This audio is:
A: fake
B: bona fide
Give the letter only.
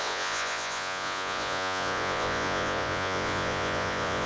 A